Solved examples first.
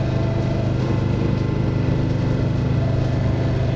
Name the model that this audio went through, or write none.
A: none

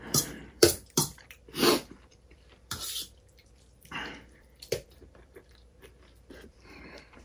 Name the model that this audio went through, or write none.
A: vocoder, BigVGAN v2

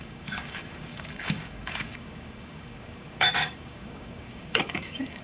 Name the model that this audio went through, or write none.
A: codec, DAC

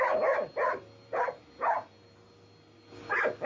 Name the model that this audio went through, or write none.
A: none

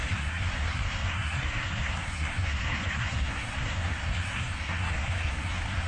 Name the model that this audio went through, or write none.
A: codec, SNAC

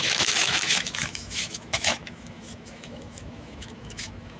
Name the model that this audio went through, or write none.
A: autoencoder, DAC-VAE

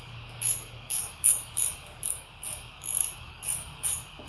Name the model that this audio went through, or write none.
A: codec, DAC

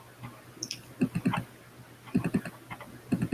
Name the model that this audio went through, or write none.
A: none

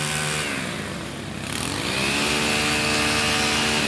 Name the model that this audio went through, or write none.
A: none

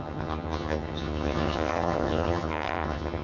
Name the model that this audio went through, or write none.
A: vocoder, HiFi-GAN